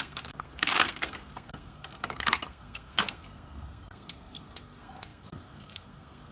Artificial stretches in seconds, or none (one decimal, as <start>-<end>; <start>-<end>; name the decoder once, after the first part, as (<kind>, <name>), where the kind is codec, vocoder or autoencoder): 0.0-6.3 (codec, SNAC)